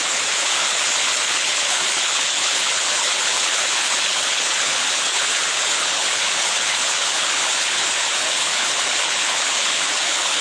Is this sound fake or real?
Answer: fake